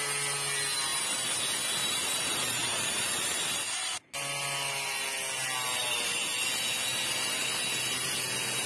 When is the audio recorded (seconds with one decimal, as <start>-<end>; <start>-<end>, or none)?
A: 0.0-0.9; 1.4-1.8; 3.4-8.7